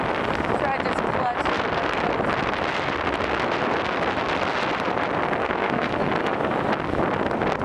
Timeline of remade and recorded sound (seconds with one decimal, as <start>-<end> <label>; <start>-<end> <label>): 0.0-5.4 recorded; 5.4-5.9 remade; 5.9-7.6 recorded